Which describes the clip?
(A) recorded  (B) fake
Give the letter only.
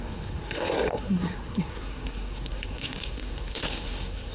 B